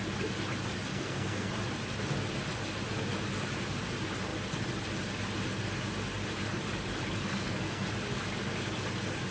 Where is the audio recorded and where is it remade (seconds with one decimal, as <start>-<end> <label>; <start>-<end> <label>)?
0.0-0.9 recorded; 0.9-1.5 remade; 1.5-7.3 recorded; 7.3-7.9 remade; 7.9-9.3 recorded